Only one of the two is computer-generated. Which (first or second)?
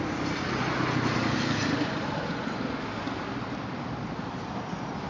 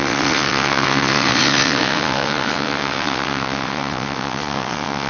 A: second